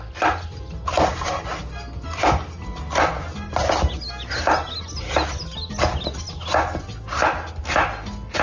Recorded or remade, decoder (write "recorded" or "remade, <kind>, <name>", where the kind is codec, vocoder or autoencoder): recorded